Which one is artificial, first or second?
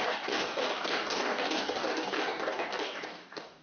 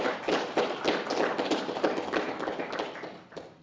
first